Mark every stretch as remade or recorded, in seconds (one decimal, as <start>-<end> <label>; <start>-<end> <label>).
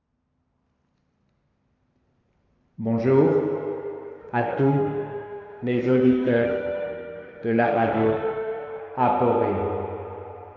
0.0-4.2 recorded; 4.2-8.8 remade; 8.8-10.6 recorded